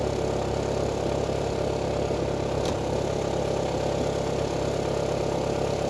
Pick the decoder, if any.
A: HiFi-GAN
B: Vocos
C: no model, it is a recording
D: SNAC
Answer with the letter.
C